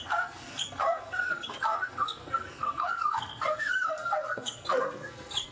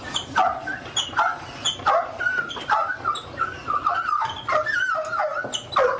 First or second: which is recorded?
second